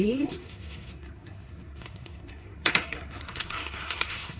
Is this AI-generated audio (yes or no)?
yes